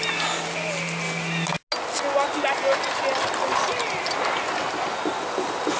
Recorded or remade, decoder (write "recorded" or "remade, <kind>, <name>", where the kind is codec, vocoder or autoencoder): recorded